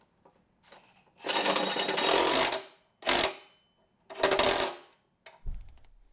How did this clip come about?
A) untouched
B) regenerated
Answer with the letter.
A